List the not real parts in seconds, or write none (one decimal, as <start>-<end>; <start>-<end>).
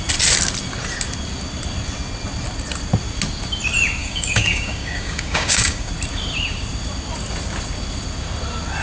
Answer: 4.0-5.9